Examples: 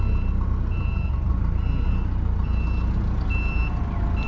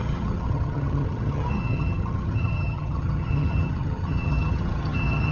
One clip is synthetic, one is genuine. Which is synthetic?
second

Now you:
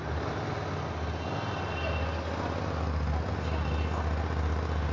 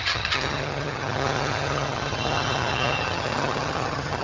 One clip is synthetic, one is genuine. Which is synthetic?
second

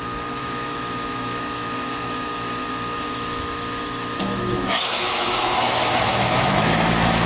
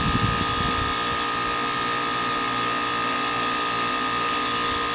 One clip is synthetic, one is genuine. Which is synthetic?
first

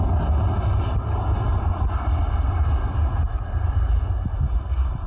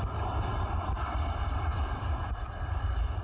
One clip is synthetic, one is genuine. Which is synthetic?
second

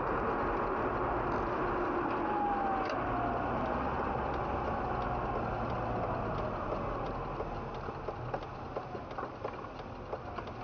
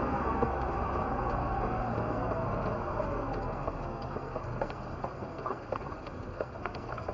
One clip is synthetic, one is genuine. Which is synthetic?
second